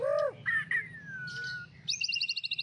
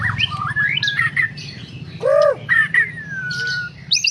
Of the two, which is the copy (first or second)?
second